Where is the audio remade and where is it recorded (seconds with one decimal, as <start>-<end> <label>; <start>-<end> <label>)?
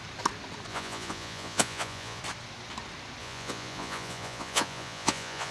0.0-0.7 recorded; 0.7-2.2 remade; 2.2-3.2 recorded; 3.2-5.5 remade